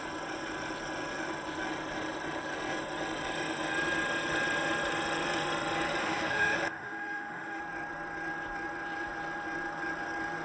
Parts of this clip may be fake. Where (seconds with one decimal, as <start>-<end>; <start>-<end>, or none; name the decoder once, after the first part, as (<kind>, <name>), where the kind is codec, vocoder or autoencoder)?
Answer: 6.0-7.6 (autoencoder, DAC-VAE)